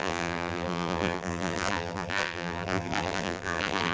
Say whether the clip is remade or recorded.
remade